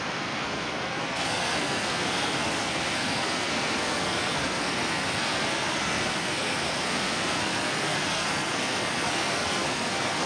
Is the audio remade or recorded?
remade